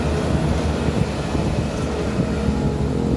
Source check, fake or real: real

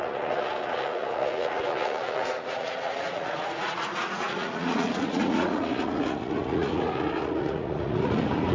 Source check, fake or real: fake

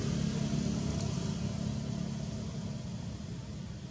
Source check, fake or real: real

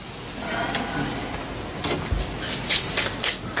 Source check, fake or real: real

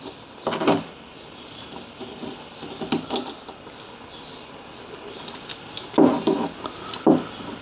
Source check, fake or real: real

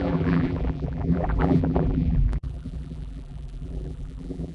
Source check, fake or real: fake